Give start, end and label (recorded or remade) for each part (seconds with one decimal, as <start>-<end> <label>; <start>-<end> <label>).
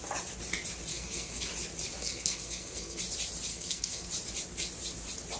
0.0-0.9 recorded; 0.9-1.5 remade; 1.5-2.0 recorded; 2.0-3.0 remade; 3.0-3.5 recorded; 3.5-4.1 remade; 4.1-5.4 recorded